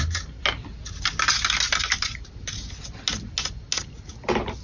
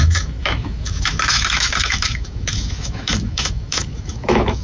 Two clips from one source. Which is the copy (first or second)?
second